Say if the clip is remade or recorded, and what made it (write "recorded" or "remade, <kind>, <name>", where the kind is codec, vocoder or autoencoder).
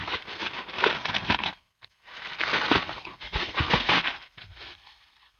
remade, codec, SNAC